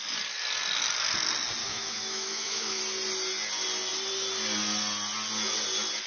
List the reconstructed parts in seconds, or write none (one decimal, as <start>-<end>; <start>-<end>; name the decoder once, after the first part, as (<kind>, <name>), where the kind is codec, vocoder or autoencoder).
1.6-2.8 (autoencoder, DAC-VAE)